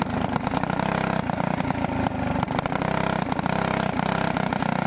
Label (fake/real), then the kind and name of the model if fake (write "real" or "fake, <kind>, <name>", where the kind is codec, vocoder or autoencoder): real